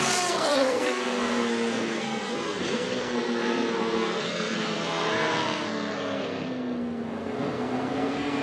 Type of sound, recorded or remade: remade